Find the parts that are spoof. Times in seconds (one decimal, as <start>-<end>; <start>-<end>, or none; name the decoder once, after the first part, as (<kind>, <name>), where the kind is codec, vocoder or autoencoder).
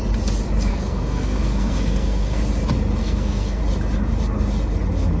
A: 0.7-2.4 (codec, SNAC); 3.0-3.6